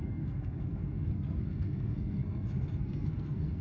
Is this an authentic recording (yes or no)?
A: no